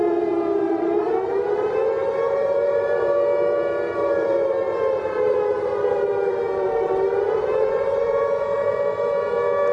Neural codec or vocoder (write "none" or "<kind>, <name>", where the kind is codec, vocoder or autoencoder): vocoder, BigVGAN v2